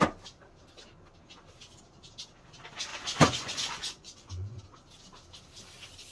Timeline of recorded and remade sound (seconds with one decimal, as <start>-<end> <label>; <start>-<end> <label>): 0.0-2.9 recorded; 2.9-4.6 remade; 4.6-6.1 recorded